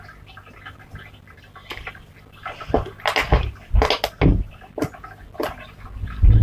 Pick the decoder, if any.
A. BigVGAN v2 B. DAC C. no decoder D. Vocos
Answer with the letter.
C